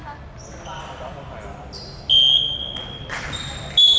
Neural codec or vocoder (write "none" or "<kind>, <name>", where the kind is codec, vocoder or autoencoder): none